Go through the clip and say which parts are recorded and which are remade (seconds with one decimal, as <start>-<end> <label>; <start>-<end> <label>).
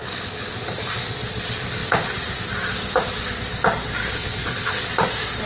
0.0-4.0 recorded; 4.0-4.8 remade; 4.8-5.5 recorded